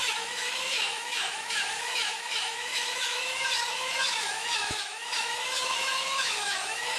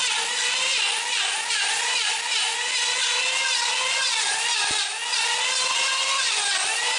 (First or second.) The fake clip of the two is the first